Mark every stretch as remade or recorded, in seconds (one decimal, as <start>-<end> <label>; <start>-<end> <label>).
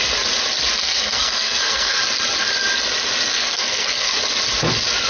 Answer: 0.0-0.8 recorded; 0.8-2.0 remade; 2.0-3.3 recorded; 3.3-4.2 remade; 4.2-5.1 recorded